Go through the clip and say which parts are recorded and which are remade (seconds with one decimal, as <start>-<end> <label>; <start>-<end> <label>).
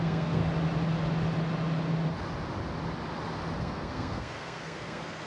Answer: 0.0-0.4 remade; 0.4-3.6 recorded; 3.6-5.3 remade